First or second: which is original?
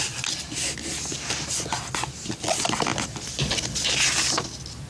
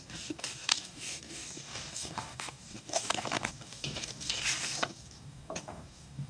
first